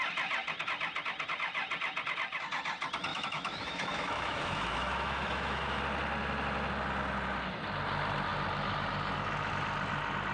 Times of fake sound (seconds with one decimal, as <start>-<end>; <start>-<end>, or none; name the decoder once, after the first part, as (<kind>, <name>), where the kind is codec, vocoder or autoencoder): 3.1-5.8 (autoencoder, DAC-VAE)